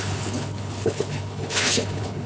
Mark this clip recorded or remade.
remade